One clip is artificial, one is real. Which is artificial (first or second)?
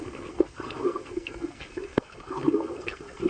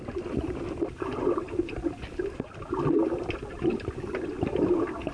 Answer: first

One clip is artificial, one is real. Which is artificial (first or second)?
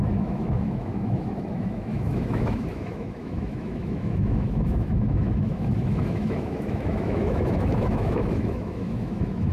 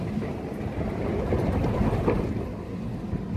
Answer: first